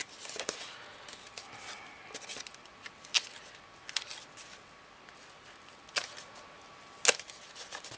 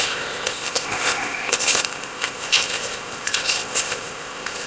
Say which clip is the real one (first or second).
first